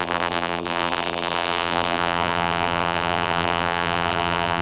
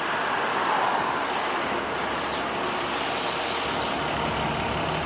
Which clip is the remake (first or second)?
first